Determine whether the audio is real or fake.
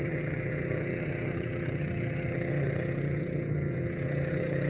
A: fake